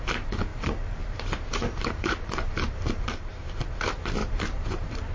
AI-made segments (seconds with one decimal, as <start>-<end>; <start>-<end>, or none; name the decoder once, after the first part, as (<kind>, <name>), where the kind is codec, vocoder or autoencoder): 0.5-3.6 (vocoder, BigVGAN v2); 4.2-5.1